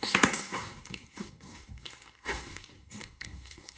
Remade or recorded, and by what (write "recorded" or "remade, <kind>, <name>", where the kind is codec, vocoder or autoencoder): remade, codec, SNAC